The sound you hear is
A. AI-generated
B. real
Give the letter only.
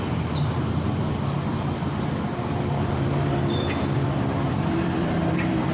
A